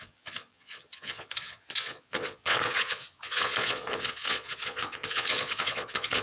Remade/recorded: remade